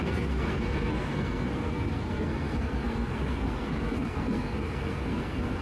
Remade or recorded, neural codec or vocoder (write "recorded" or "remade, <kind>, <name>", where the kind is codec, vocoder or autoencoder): remade, codec, SNAC